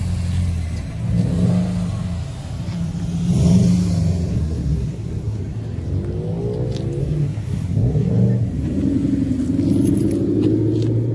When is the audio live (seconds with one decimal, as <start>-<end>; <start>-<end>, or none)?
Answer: 0.0-4.3; 5.4-7.0; 8.1-11.1